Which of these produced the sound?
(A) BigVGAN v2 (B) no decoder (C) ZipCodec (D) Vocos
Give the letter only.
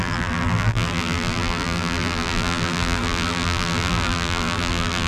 A